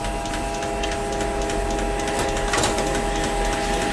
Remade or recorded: recorded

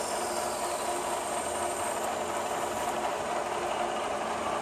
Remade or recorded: recorded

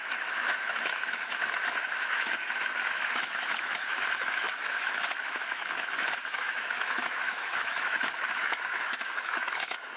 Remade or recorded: remade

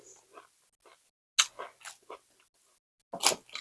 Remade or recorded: recorded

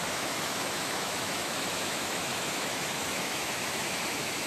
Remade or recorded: remade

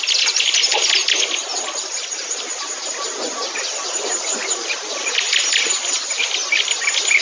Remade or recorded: recorded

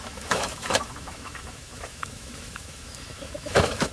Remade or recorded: remade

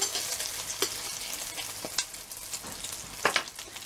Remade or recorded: recorded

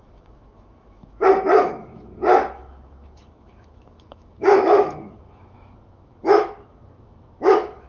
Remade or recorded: remade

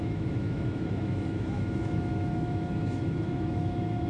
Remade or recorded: remade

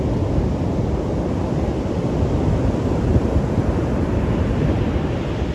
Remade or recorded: recorded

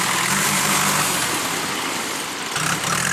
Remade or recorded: recorded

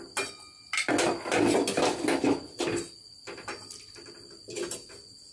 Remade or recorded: recorded